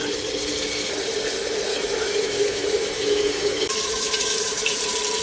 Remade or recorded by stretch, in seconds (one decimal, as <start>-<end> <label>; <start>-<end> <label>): 0.0-1.7 recorded; 1.7-4.8 remade; 4.8-5.2 recorded